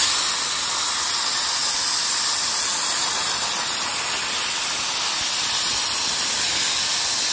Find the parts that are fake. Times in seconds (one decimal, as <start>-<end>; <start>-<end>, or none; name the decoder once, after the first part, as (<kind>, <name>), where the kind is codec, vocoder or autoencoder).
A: none